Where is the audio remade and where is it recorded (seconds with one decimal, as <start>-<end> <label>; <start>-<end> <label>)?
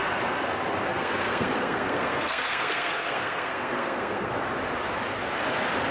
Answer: 0.0-0.9 recorded; 0.9-4.3 remade; 4.3-5.9 recorded